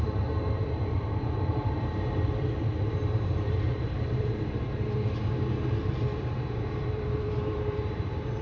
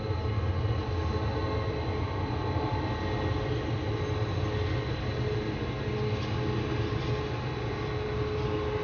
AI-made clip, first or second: first